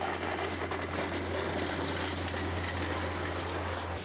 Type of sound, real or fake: real